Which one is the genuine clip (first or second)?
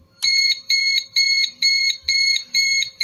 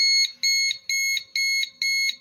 second